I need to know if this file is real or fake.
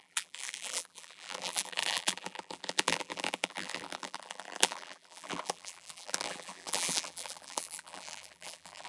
fake